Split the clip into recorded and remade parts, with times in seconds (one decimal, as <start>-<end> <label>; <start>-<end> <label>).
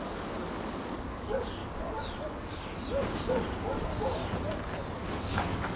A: 0.0-1.6 remade; 1.6-2.3 recorded; 2.3-2.7 remade; 2.7-3.3 recorded; 3.3-4.2 remade; 4.2-5.1 recorded; 5.1-5.8 remade